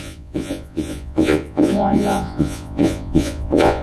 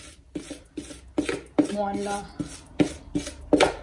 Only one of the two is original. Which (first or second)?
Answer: second